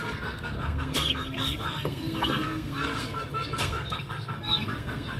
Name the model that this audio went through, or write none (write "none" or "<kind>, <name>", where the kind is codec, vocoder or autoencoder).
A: codec, SNAC